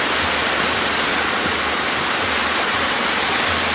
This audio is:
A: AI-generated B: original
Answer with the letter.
B